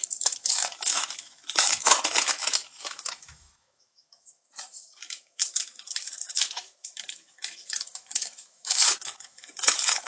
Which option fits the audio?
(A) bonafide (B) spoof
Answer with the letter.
B